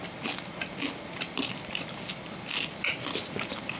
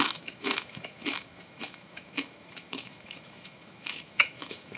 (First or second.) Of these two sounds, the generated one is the second